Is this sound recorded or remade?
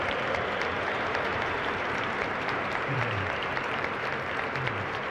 remade